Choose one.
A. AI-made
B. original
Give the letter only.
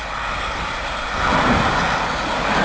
B